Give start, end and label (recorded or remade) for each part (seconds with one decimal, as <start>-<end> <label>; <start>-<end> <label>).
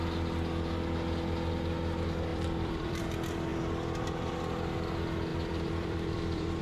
0.0-2.3 recorded; 2.3-3.0 remade; 3.0-5.3 recorded; 5.3-6.6 remade